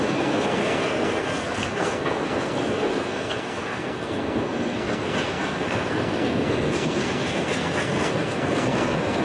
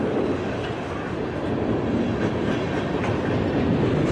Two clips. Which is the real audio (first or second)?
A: second